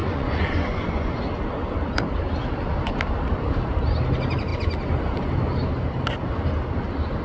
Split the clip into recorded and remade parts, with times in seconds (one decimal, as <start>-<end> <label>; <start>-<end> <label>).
0.0-1.2 remade; 1.2-7.2 recorded